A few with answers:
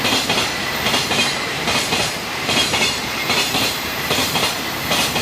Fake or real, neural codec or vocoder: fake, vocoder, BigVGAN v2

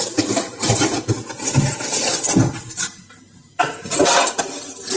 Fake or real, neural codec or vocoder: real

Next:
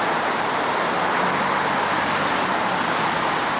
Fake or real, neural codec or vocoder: real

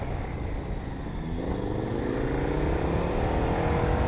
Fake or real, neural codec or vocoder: real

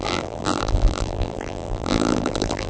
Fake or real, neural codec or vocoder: fake, vocoder, BigVGAN v2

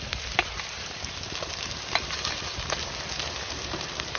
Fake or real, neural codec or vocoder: fake, vocoder, BigVGAN v2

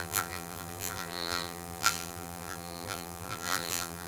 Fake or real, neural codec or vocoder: fake, vocoder, BigVGAN v2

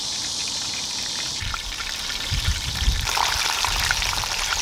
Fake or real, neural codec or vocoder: fake, vocoder, BigVGAN v2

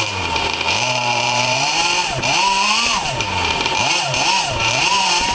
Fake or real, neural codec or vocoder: fake, vocoder, BigVGAN v2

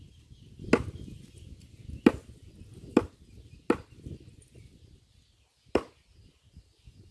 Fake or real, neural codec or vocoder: real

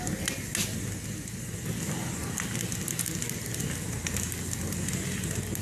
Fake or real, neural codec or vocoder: real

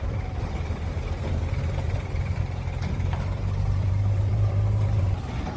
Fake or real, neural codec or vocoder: fake, vocoder, BigVGAN v2